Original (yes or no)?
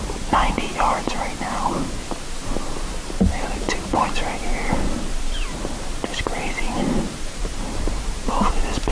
no